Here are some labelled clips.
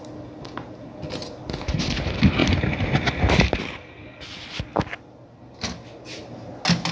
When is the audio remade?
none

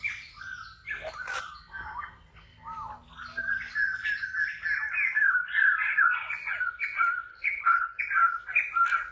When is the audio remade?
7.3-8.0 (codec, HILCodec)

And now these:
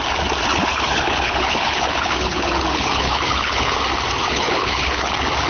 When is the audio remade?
0.5-3.8 (codec, HILCodec); 4.2-5.1

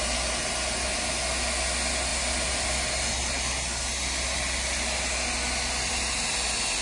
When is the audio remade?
none

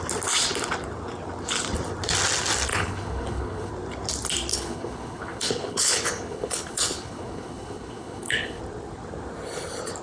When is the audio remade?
2.7-3.7 (codec, HILCodec); 4.5-8.6

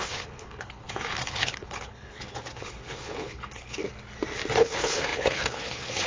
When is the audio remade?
0.0-3.8 (codec, HILCodec); 4.6-6.1